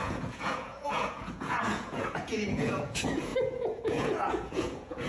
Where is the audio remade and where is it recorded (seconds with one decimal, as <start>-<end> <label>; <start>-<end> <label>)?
0.0-5.1 remade